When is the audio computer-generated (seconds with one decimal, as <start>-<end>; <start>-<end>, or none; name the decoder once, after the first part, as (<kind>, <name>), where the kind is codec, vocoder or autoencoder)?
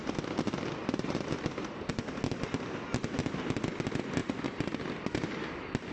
0.8-1.9 (vocoder, BigVGAN v2)